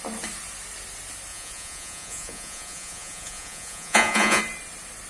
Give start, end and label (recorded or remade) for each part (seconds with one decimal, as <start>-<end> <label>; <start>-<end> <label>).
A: 0.0-1.3 recorded; 1.3-4.4 remade; 4.4-5.1 recorded